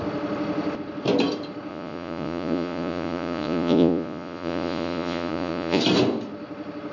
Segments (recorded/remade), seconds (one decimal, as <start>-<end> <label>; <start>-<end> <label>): 0.0-1.7 recorded; 1.7-5.8 remade; 5.8-6.9 recorded